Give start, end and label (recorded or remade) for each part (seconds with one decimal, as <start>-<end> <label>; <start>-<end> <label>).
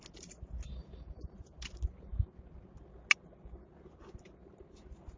0.0-5.2 recorded